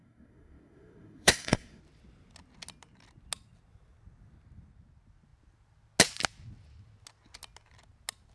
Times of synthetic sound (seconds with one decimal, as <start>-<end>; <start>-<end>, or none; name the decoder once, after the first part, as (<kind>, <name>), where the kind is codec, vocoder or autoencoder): 0.0-1.8 (codec, SNAC)